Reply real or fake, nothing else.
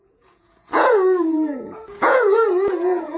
fake